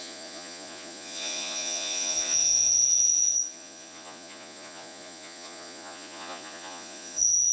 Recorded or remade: remade